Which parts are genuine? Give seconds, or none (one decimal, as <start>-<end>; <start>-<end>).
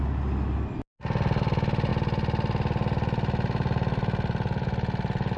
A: 0.0-5.4